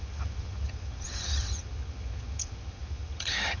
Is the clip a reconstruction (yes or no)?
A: yes